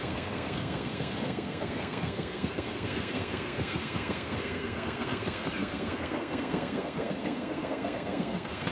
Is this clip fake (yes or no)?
yes